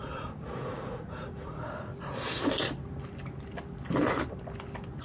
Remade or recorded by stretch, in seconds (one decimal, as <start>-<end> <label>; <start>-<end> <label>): 0.0-1.9 remade; 1.9-5.0 recorded